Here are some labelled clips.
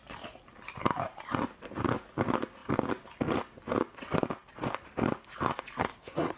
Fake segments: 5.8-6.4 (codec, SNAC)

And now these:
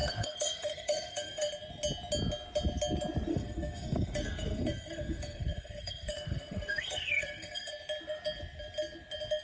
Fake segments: 0.0-1.5 (codec, SNAC); 3.3-7.7

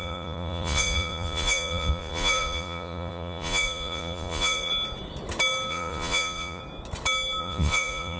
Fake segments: 0.0-4.7 (vocoder, Vocos); 5.7-6.6; 7.4-8.2

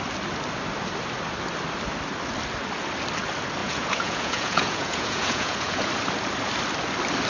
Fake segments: 3.6-5.9 (vocoder, Vocos)

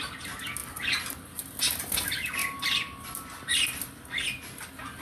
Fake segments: 2.4-5.0 (vocoder, BigVGAN v2)

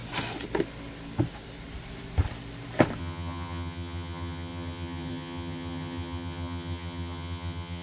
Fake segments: 3.0-7.8 (vocoder, HiFi-GAN)